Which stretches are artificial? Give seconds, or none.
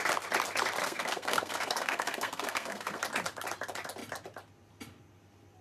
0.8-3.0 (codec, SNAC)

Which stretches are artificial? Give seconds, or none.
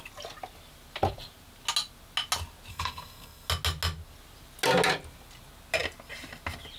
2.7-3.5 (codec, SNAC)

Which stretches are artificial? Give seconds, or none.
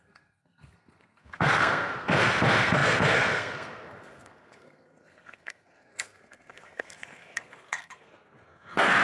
0.0-9.0 (codec, SNAC)